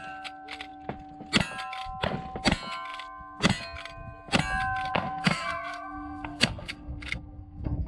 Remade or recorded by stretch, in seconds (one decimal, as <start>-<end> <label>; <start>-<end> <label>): 0.0-4.9 recorded; 4.9-7.9 remade